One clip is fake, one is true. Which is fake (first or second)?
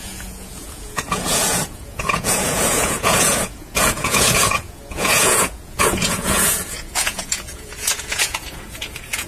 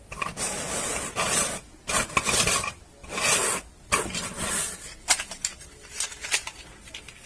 first